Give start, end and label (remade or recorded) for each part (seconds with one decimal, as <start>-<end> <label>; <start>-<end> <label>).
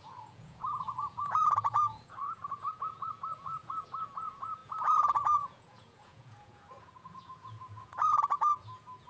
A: 0.0-9.1 remade